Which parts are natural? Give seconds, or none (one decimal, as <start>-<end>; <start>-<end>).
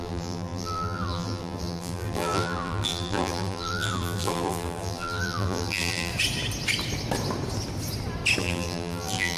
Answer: 6.1-8.4